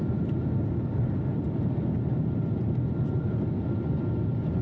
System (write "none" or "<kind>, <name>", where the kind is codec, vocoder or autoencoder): none